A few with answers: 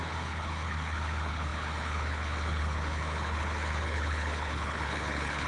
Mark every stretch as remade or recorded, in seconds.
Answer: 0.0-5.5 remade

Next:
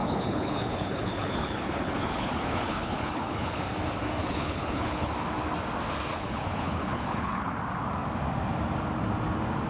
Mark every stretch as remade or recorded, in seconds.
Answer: 0.0-3.6 remade; 3.6-4.2 recorded; 4.2-5.1 remade; 5.1-6.1 recorded; 6.1-7.5 remade; 7.5-9.7 recorded